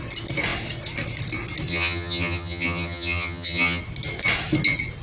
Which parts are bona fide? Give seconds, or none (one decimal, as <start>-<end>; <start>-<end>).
0.0-1.7; 3.8-5.0